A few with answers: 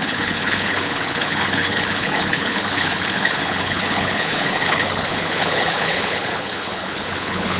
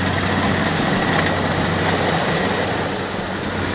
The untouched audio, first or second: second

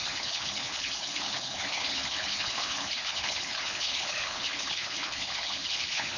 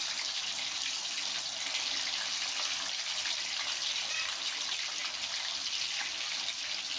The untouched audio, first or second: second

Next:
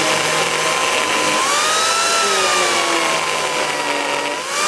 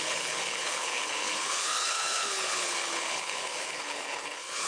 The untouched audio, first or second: first